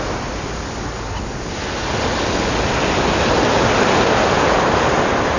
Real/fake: real